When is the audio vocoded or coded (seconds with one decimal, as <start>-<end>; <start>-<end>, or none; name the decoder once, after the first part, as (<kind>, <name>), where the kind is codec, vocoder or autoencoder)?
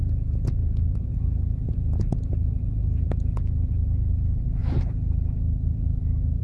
0.0-4.6 (vocoder, Vocos)